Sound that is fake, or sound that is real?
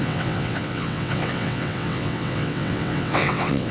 fake